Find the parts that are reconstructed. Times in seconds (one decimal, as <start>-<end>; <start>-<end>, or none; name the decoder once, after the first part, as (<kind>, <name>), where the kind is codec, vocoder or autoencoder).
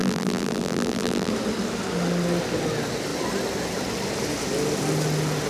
0.0-1.3 (vocoder, BigVGAN v2)